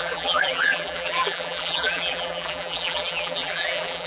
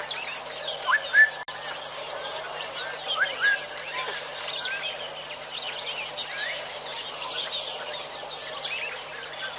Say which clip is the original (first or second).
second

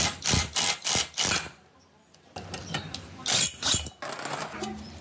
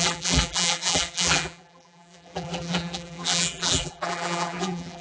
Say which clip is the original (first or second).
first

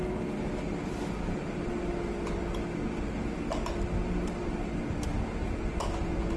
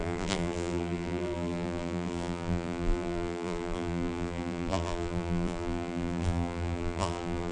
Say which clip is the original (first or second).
first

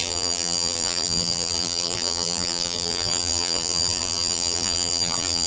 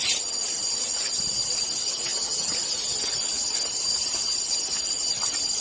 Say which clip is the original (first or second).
second